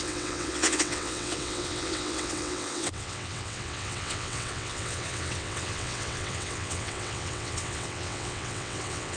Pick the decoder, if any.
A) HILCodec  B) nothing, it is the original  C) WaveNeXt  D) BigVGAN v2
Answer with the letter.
C